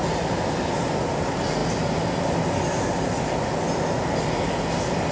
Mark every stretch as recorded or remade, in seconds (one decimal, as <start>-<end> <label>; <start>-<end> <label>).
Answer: 0.0-5.1 recorded